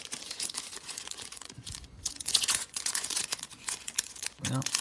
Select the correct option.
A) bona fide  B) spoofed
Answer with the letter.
B